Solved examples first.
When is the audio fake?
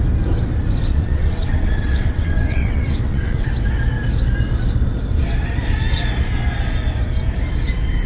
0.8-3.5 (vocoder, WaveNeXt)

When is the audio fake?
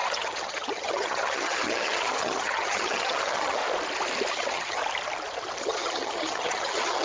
0.0-3.6 (vocoder, HiFi-GAN); 4.3-4.8; 5.6-7.0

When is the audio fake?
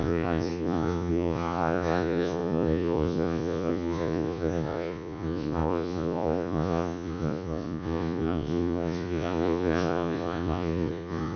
0.0-11.4 (vocoder, Vocos)